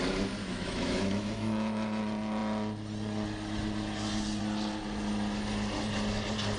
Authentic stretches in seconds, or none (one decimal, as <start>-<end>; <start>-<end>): 0.0-0.4; 2.0-6.6